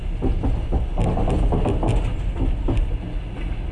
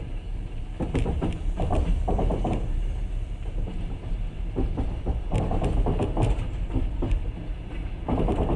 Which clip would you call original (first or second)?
first